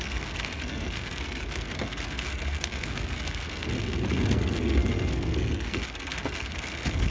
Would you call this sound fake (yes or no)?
yes